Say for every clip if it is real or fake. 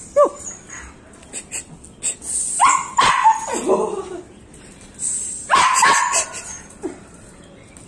real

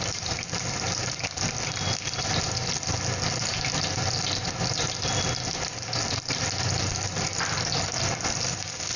real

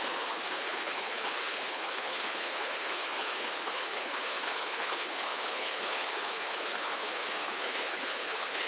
fake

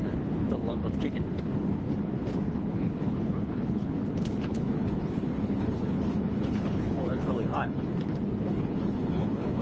fake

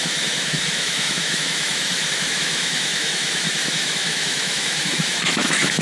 fake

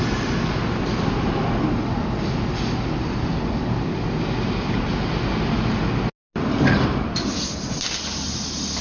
real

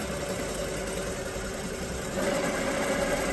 real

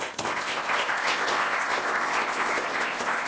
fake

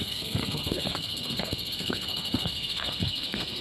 fake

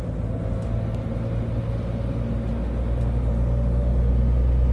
real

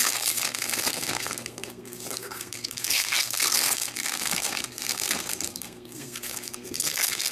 fake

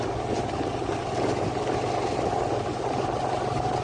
real